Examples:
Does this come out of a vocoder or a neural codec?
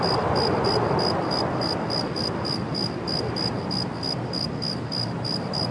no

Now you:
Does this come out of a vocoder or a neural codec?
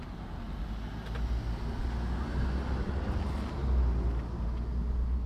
no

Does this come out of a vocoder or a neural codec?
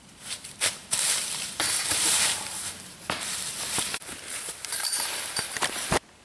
yes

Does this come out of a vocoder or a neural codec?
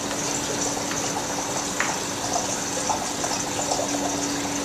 no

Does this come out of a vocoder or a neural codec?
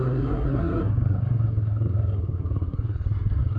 yes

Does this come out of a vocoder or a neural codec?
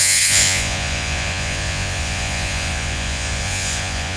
yes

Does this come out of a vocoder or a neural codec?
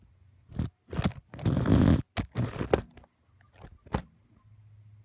no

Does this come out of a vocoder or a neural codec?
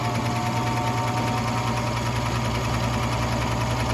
no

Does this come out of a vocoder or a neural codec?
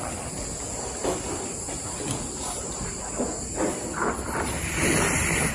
no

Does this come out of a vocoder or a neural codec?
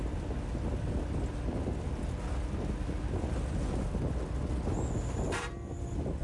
no